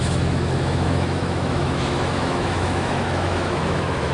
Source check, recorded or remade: remade